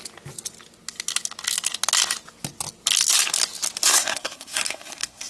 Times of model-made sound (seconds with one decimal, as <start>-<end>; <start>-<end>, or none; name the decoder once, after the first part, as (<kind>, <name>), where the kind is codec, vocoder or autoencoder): 3.9-5.3 (codec, SNAC)